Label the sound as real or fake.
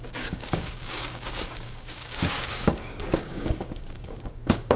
fake